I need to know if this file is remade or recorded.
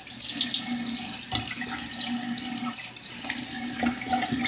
recorded